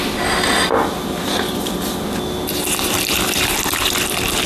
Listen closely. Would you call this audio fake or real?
real